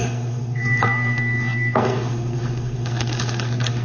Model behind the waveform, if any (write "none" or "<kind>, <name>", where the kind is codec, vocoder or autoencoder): codec, SNAC